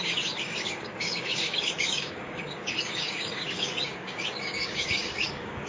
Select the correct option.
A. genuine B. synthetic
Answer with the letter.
B